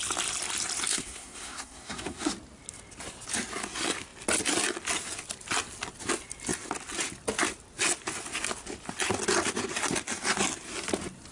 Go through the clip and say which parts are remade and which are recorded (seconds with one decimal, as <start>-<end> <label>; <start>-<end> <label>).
0.0-0.9 recorded; 0.9-2.3 remade; 2.3-11.3 recorded